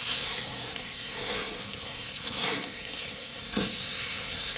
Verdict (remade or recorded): remade